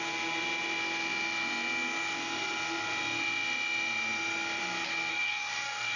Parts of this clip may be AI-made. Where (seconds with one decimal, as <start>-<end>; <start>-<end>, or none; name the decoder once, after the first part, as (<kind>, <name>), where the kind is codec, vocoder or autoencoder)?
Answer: 5.1-6.0 (codec, DAC)